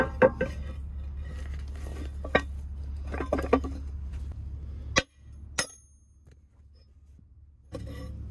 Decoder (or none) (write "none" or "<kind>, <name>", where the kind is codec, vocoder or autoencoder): none